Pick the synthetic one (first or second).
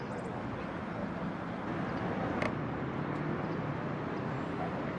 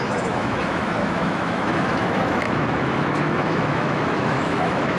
second